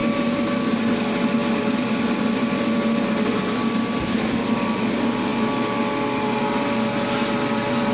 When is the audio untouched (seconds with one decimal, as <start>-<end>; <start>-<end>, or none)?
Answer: 0.0-7.9